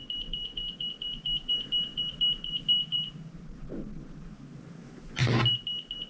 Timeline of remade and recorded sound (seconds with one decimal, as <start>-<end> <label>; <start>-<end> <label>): 0.0-6.1 recorded